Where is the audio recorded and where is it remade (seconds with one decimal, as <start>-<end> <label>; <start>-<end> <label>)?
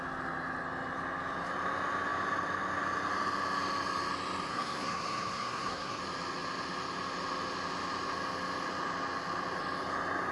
0.0-4.5 recorded; 4.5-6.0 remade; 6.0-10.3 recorded